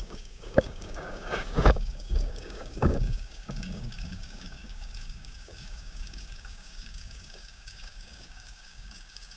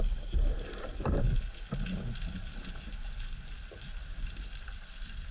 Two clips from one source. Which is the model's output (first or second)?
first